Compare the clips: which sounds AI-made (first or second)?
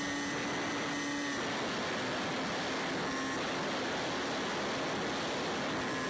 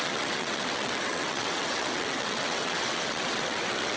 second